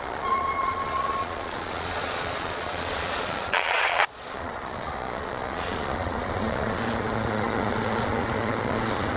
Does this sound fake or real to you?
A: fake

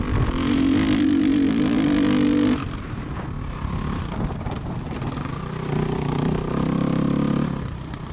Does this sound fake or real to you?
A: real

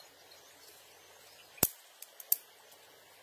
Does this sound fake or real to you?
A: real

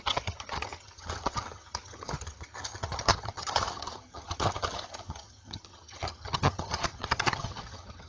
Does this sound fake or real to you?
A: fake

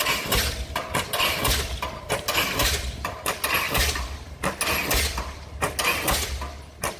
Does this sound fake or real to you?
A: real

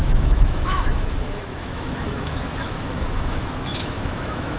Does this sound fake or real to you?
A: fake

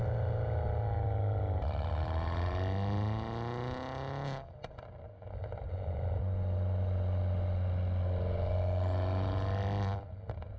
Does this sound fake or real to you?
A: real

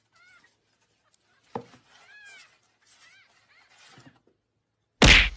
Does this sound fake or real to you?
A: real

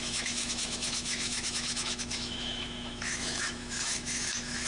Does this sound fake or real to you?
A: fake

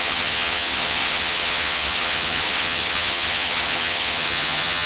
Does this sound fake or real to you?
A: fake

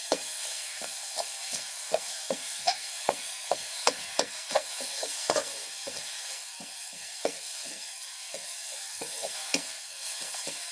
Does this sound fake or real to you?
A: fake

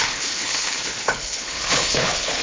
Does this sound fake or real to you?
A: fake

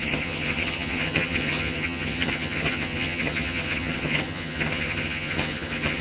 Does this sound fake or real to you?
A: fake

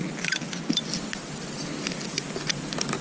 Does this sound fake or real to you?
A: real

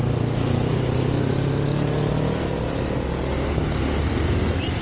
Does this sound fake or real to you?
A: real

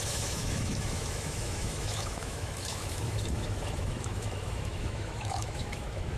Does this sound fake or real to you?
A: fake